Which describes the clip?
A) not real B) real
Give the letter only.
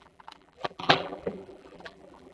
A